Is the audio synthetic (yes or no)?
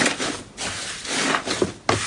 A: no